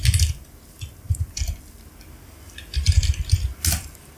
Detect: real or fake real